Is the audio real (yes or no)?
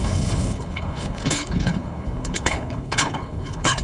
no